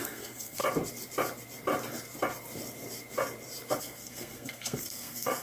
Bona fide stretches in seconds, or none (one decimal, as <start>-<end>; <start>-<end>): 0.6-3.8